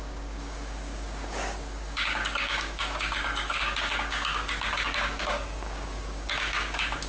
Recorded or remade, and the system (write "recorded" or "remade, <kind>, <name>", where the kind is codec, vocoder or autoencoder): remade, codec, DAC